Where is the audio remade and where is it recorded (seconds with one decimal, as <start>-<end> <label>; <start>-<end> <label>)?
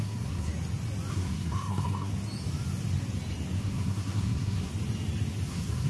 0.0-0.5 remade; 0.5-1.1 recorded; 1.1-2.1 remade; 2.1-3.6 recorded; 3.6-4.7 remade; 4.7-5.5 recorded; 5.5-5.9 remade